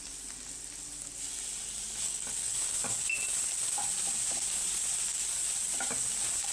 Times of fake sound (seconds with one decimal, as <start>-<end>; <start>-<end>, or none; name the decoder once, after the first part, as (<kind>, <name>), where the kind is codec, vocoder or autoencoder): none